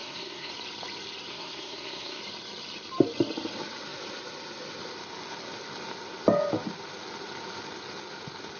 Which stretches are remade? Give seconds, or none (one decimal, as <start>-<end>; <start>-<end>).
0.0-0.5; 1.3-2.2